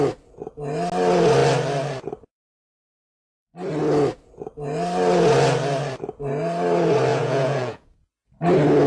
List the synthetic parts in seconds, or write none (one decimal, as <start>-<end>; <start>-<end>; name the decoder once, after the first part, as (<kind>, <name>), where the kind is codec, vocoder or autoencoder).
7.1-8.1 (vocoder, Vocos)